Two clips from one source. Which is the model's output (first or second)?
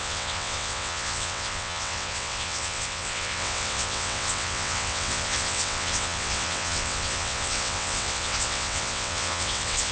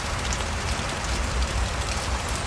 first